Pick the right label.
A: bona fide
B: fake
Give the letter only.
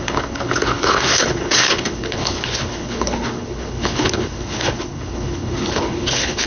B